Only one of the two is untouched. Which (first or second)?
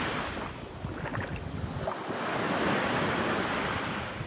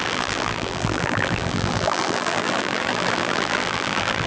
first